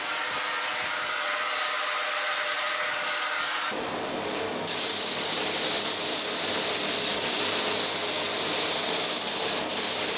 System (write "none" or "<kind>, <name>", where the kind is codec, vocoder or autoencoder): none